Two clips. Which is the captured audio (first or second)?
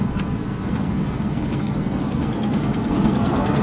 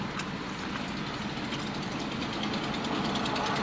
second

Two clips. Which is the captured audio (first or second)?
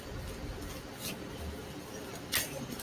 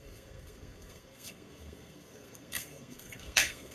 first